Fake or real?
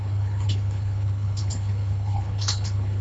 fake